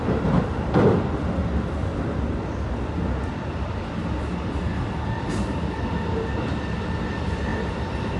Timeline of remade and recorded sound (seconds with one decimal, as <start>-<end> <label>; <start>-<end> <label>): 0.0-8.2 recorded